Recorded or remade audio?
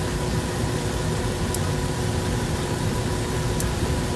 recorded